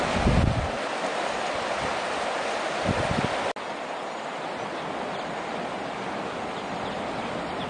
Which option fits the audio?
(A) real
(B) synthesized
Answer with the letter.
A